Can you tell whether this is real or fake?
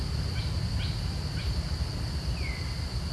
real